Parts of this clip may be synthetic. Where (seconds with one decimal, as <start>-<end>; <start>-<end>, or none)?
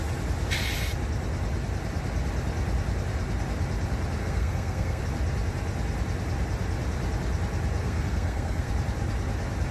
4.2-5.0; 7.8-8.7